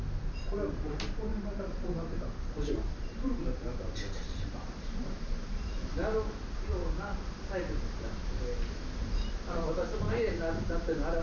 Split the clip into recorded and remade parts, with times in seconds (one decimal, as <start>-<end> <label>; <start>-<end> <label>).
0.0-0.7 recorded; 0.7-6.0 remade; 6.0-10.1 recorded; 10.1-11.2 remade